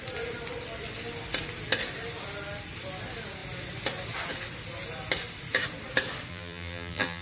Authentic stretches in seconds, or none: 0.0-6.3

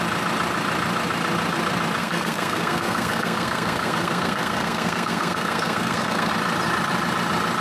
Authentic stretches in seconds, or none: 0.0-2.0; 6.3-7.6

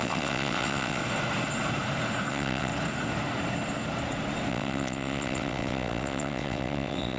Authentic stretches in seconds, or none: 1.0-2.3; 2.7-4.5

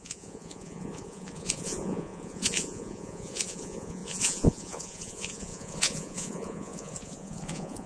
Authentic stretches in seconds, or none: none

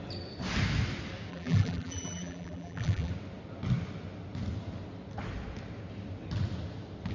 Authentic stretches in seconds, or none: 0.0-1.3; 3.1-7.1

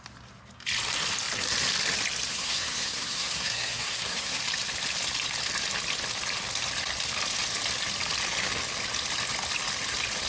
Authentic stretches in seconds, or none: 0.0-2.3; 4.4-10.3